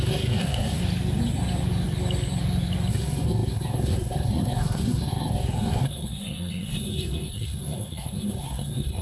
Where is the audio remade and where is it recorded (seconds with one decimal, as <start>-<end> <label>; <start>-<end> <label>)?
0.0-0.8 remade; 0.8-2.9 recorded; 2.9-9.0 remade